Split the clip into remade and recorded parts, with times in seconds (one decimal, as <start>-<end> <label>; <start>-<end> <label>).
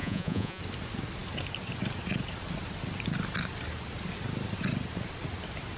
0.0-0.6 remade; 0.6-5.8 recorded